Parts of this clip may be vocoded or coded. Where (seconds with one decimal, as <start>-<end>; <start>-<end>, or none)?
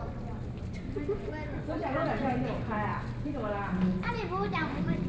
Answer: none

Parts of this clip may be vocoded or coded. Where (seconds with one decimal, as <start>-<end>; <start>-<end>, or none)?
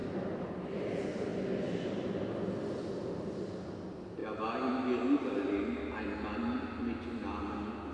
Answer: none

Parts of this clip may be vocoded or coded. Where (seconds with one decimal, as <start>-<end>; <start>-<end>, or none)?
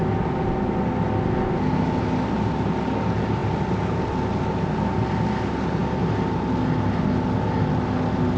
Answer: none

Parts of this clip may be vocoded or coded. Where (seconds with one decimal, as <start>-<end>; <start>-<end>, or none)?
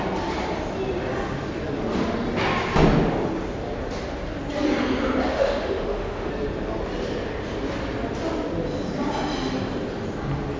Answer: 5.3-6.3